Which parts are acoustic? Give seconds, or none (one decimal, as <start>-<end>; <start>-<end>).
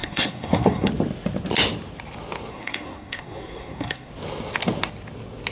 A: 0.9-2.5; 4.1-5.5